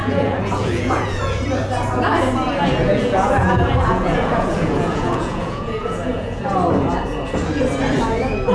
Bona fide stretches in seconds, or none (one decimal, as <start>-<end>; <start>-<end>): 1.4-2.8; 6.4-8.5